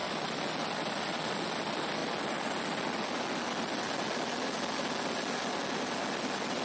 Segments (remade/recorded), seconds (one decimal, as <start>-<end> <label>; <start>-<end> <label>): 0.0-6.6 recorded